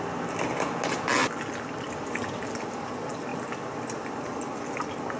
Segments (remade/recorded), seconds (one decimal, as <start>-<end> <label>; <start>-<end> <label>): 0.0-5.2 recorded